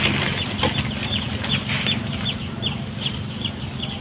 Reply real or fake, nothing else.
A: real